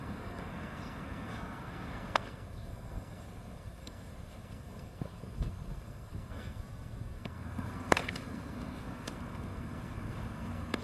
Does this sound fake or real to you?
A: fake